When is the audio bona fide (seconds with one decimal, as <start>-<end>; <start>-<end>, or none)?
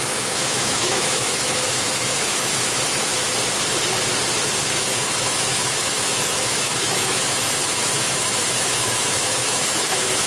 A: 3.1-4.6